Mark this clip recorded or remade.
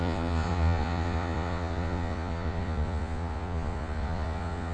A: remade